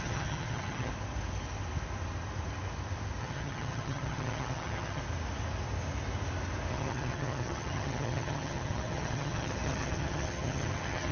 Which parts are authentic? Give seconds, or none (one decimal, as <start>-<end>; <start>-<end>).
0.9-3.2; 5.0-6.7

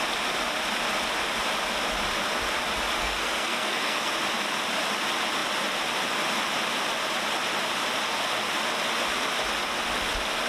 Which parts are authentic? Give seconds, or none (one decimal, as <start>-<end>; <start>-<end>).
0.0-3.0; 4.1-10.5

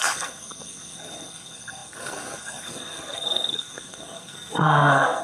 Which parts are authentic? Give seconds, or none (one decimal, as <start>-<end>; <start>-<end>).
none

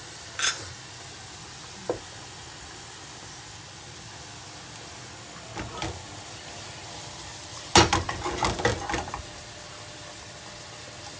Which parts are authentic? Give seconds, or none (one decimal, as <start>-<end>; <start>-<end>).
0.0-11.2

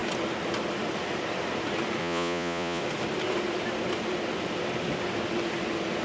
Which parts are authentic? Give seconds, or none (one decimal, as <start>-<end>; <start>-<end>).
0.0-2.0; 2.8-6.0

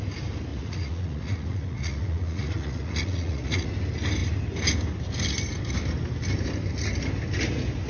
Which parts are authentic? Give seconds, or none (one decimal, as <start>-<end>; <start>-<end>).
0.0-0.5; 3.7-7.9